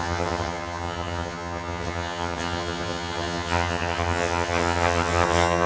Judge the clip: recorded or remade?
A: remade